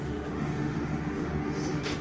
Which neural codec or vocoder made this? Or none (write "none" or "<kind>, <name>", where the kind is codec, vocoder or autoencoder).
autoencoder, DAC-VAE